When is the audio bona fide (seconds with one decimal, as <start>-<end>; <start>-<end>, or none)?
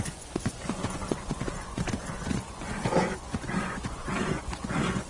none